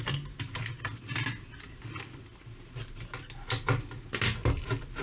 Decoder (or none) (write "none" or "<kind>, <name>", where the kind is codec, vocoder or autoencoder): none